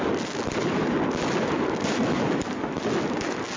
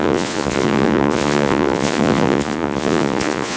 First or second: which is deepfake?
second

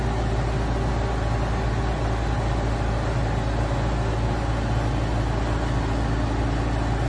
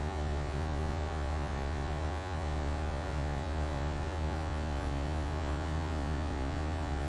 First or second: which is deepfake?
second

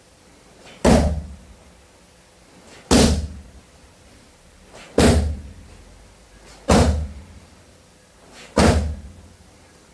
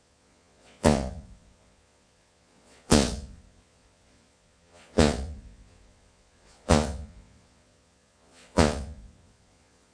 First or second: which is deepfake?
second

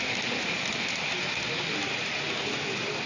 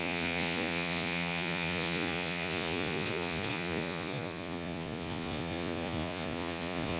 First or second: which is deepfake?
second